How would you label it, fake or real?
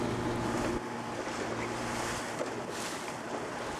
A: real